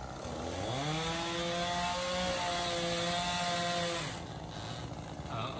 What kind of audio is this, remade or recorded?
recorded